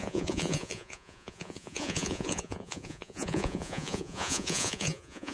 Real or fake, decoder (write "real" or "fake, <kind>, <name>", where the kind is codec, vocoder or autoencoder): fake, vocoder, Vocos